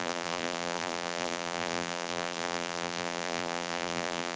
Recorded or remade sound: remade